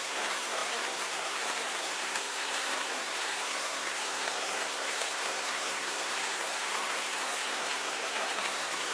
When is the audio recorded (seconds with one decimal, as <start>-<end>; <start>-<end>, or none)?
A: none